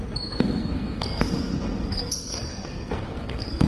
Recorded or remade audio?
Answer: remade